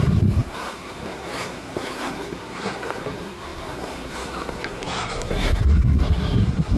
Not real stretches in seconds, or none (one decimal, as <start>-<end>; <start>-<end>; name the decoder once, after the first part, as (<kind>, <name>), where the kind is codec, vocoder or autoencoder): 0.0-6.8 (codec, SNAC)